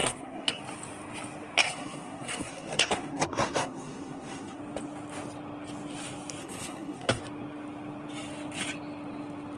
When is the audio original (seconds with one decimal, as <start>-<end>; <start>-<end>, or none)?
0.6-1.6; 4.6-6.4; 7.2-9.6